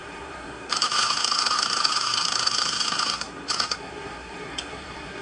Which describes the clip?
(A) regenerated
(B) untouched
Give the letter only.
A